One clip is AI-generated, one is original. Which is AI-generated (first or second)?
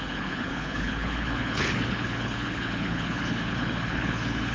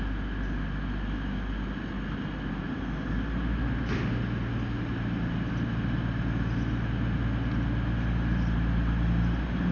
first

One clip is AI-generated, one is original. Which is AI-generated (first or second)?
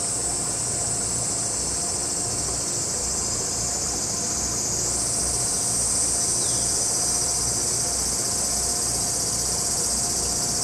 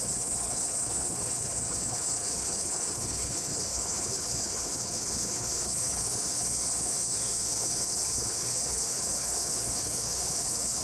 second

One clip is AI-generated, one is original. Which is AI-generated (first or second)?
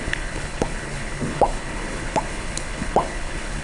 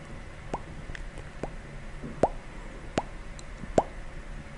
first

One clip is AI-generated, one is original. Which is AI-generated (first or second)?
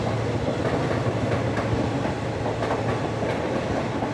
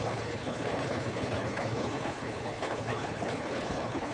second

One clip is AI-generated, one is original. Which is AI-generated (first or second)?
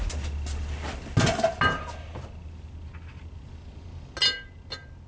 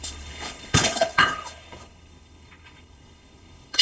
second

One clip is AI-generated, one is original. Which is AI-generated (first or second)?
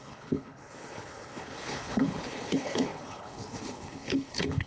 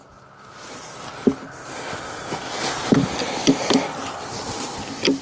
first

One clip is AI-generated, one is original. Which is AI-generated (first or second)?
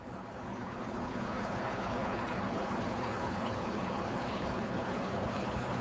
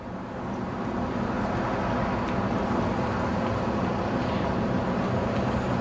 first